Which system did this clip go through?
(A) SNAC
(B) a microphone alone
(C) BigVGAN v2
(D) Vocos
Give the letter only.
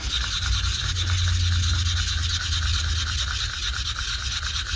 B